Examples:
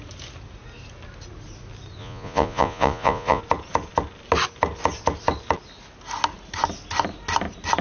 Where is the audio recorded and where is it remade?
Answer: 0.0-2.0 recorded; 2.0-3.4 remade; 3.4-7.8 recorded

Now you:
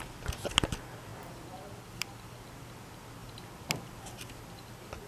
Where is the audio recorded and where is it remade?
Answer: 0.0-1.1 recorded; 1.1-2.5 remade; 2.5-5.1 recorded

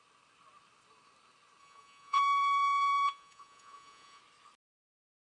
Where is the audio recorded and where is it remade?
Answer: 0.0-1.6 recorded; 1.6-4.2 remade; 4.2-5.2 recorded

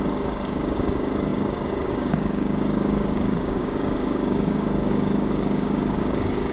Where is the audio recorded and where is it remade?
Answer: 0.0-6.5 remade

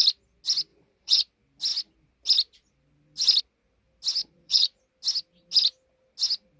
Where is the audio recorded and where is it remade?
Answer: 0.0-0.7 recorded; 0.7-1.2 remade; 1.2-4.2 recorded; 4.2-4.8 remade; 4.8-6.6 recorded

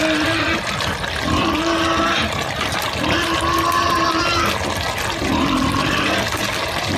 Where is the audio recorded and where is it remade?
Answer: 0.0-7.0 recorded

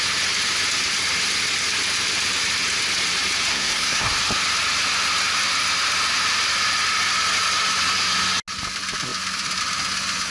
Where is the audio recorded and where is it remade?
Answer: 0.0-3.5 recorded; 3.5-4.1 remade; 4.1-10.3 recorded